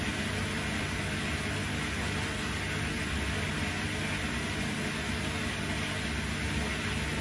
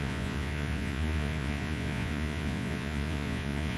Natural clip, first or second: first